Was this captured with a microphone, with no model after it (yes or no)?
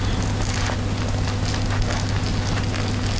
yes